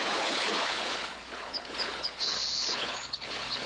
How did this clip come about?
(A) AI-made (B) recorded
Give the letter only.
A